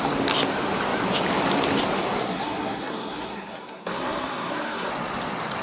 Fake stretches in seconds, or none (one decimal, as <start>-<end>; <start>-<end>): 2.2-4.9